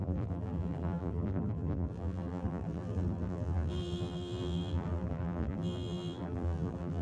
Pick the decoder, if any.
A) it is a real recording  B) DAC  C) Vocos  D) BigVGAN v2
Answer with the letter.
D